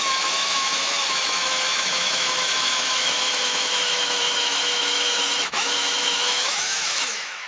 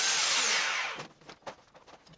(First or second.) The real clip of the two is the second